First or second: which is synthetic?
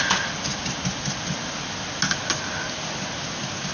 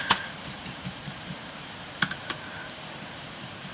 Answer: second